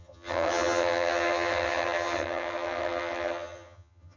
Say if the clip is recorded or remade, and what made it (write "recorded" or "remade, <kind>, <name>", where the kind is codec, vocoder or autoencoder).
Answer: remade, vocoder, HiFi-GAN